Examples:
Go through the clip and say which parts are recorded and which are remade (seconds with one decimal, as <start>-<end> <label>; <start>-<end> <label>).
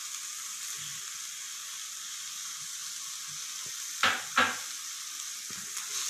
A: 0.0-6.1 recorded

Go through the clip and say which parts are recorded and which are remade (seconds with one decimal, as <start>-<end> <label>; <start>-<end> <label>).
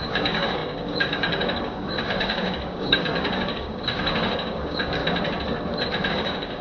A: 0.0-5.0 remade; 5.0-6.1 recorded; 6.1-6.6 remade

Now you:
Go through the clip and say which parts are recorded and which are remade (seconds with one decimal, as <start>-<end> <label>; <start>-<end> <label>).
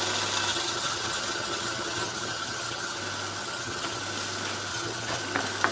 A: 0.0-0.5 recorded; 0.5-3.0 remade; 3.0-3.4 recorded; 3.4-4.0 remade; 4.0-4.7 recorded; 4.7-5.2 remade; 5.2-5.7 recorded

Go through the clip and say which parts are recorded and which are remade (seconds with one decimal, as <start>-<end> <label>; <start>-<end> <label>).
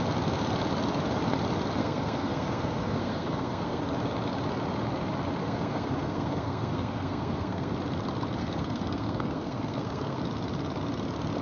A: 0.0-1.8 recorded; 1.8-3.8 remade; 3.8-5.4 recorded; 5.4-7.7 remade; 7.7-8.4 recorded; 8.4-10.2 remade; 10.2-11.4 recorded